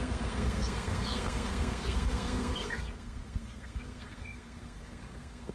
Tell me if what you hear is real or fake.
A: fake